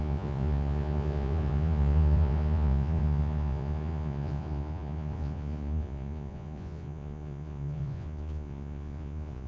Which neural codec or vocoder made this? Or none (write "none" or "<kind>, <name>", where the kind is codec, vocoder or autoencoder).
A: vocoder, Vocos